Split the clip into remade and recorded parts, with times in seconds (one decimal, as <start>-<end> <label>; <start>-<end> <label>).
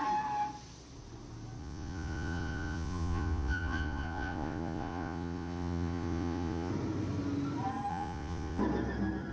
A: 0.0-1.6 recorded; 1.6-6.7 remade; 6.7-7.9 recorded; 7.9-8.6 remade; 8.6-9.3 recorded